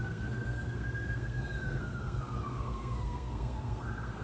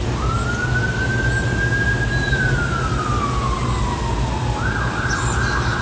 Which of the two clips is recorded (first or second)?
second